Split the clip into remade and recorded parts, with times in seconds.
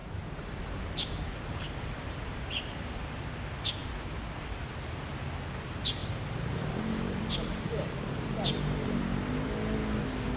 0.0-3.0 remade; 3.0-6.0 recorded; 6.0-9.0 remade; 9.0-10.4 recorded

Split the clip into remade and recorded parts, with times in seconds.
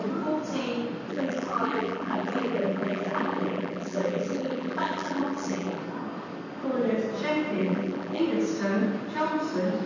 0.0-1.1 recorded; 1.1-5.8 remade; 5.8-7.6 recorded; 7.6-8.2 remade; 8.2-9.9 recorded